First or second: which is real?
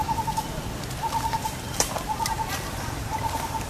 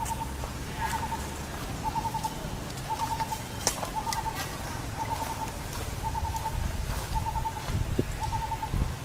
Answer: second